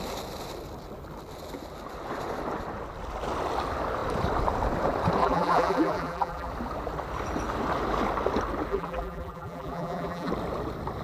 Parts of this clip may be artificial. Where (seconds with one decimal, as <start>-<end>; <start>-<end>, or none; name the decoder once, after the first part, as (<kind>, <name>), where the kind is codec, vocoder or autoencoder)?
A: 5.2-6.5 (vocoder, BigVGAN v2); 8.7-10.3